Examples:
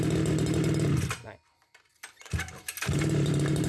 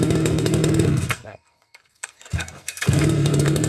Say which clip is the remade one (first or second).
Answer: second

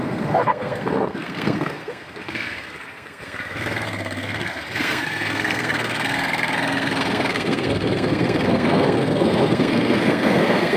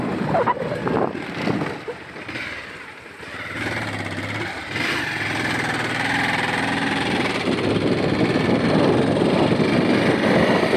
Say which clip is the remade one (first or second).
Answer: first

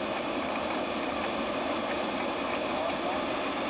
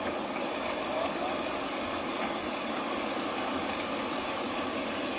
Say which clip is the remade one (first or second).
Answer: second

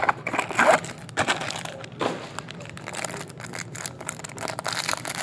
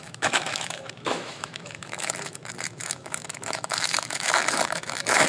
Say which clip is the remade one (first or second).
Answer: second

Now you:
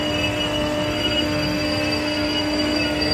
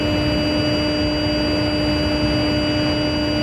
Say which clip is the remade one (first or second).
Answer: first